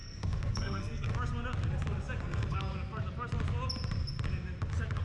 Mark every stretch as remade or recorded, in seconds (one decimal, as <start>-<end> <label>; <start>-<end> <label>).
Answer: 0.0-1.1 remade; 1.1-2.2 recorded; 2.2-2.7 remade; 2.7-5.0 recorded